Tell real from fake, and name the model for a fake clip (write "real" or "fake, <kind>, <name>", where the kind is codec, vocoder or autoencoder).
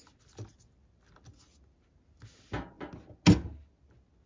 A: real